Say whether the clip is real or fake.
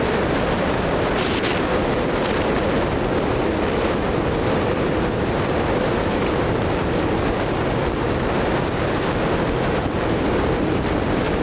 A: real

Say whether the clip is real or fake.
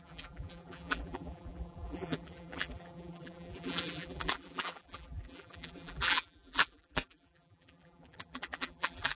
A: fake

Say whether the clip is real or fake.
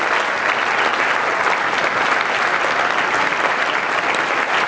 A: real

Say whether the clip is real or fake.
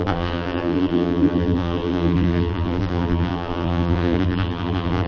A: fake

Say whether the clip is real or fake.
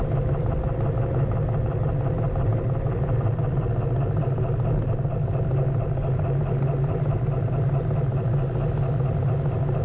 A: real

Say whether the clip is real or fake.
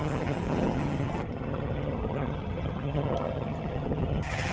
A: fake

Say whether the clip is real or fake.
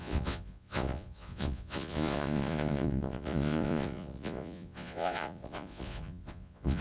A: fake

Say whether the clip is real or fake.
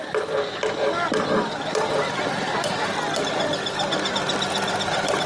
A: real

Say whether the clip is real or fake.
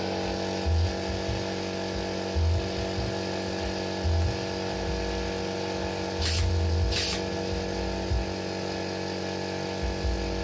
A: real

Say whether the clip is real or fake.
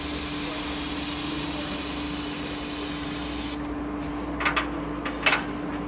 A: real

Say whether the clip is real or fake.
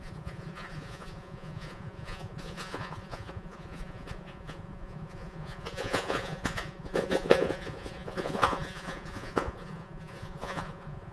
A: fake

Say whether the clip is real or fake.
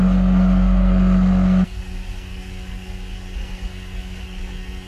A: fake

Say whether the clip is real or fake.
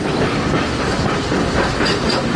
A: fake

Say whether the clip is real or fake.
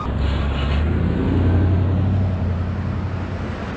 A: real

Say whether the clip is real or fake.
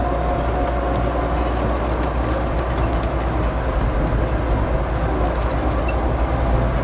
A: real